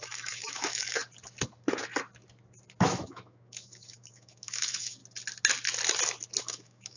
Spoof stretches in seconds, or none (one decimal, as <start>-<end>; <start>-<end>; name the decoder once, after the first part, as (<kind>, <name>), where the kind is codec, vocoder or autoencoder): 0.0-1.0 (autoencoder, DAC-VAE); 2.8-5.0; 6.4-7.0